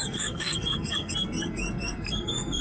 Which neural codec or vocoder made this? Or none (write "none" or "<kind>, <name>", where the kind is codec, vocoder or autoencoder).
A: codec, SNAC